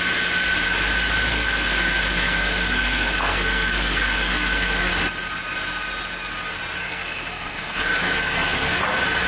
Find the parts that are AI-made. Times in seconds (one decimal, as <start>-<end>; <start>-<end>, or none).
1.3-4.9; 6.8-8.8